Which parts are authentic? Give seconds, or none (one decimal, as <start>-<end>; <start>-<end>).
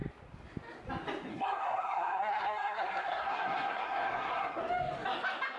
0.0-1.3; 4.6-5.6